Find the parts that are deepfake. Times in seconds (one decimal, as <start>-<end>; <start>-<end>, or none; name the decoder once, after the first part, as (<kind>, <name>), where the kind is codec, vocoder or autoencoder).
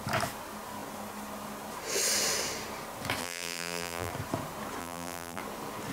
3.2-4.1 (vocoder, BigVGAN v2); 4.8-5.4